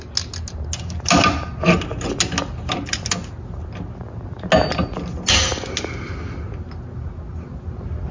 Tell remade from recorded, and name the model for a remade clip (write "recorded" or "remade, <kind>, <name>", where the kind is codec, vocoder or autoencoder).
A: recorded